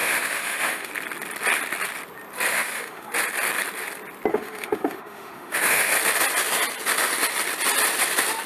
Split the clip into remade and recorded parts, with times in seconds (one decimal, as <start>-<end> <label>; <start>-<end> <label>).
0.0-0.9 remade; 0.9-2.5 recorded; 2.5-3.1 remade; 3.1-4.3 recorded; 4.3-5.9 remade; 5.9-8.5 recorded